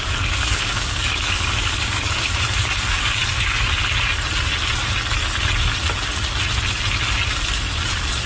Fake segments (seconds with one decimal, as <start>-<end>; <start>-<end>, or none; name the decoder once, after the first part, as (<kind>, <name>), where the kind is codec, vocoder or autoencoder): 0.0-3.2 (codec, DAC)

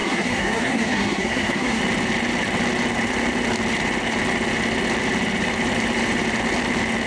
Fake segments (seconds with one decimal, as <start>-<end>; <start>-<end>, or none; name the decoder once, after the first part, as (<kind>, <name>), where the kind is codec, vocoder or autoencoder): 0.0-1.8 (codec, SNAC)

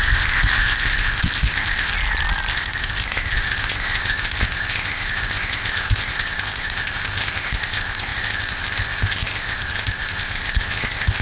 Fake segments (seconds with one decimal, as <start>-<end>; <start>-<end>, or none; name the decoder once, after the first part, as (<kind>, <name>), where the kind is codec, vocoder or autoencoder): 0.0-1.9 (codec, ZipCodec); 2.5-11.2

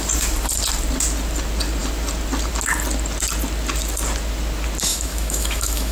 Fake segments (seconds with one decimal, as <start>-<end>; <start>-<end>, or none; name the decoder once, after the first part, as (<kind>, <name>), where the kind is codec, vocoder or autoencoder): 4.9-5.9 (autoencoder, DAC-VAE)

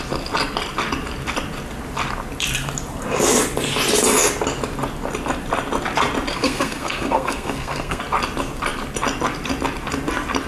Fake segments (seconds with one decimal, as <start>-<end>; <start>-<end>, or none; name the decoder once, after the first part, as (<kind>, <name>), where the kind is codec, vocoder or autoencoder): 6.3-8.0 (codec, SNAC)

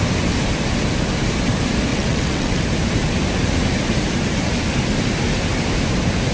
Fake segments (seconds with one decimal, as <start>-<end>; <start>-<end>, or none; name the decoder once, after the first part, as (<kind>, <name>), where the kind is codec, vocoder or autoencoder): 1.9-2.6 (vocoder, WaveNeXt)

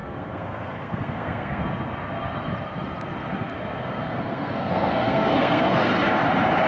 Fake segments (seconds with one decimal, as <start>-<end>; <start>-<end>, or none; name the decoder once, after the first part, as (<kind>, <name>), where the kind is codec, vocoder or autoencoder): 0.0-1.6 (codec, SNAC); 4.2-5.9

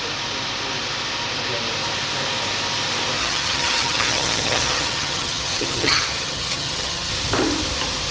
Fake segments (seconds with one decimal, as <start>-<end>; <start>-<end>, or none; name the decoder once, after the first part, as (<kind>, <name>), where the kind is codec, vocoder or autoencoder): 3.2-7.1 (vocoder, HiFi-GAN)